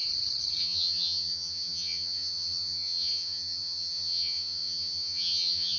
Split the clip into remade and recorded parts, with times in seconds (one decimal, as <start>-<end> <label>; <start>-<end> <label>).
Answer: 0.0-0.6 recorded; 0.6-5.8 remade